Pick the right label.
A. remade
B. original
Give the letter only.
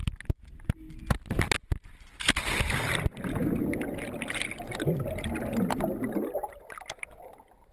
B